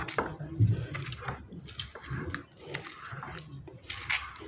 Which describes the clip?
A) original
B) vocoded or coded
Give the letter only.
A